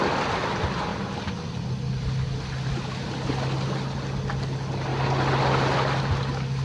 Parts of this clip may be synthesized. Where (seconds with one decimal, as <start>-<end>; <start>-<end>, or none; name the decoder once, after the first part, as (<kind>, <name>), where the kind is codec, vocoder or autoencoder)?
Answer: none